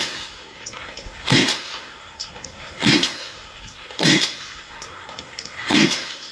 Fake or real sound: fake